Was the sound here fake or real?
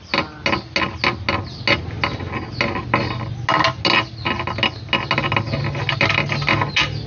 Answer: real